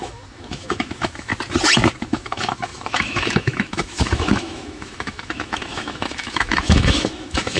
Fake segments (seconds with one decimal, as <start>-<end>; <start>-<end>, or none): 0.0-1.3; 2.0-7.6